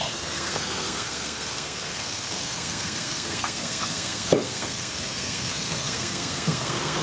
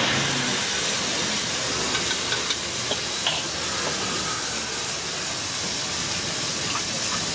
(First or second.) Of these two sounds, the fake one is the first